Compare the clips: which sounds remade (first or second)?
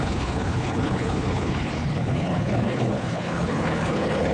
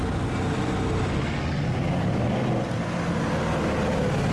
first